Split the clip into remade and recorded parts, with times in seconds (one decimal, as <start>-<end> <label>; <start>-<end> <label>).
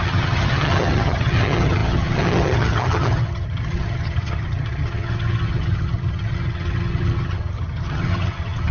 0.0-8.7 remade